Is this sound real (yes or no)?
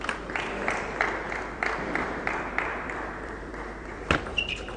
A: no